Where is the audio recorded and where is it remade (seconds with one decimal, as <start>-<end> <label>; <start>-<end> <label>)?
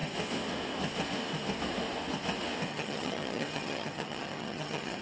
0.0-2.7 recorded; 2.7-5.0 remade